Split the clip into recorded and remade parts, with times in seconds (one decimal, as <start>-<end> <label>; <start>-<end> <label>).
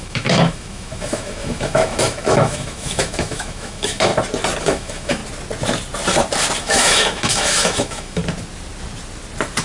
0.0-4.1 remade; 4.1-4.6 recorded; 4.6-5.2 remade; 5.2-6.6 recorded; 6.6-8.2 remade; 8.2-9.6 recorded